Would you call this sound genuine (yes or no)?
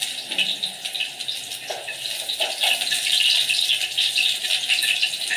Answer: yes